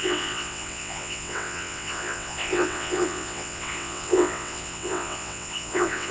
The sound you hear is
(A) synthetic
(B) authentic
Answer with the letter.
A